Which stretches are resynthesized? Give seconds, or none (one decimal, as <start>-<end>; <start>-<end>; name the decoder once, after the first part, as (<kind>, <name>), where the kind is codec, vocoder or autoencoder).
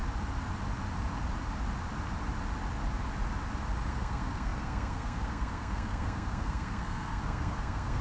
3.9-8.0 (codec, SNAC)